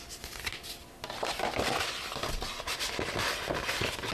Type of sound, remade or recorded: recorded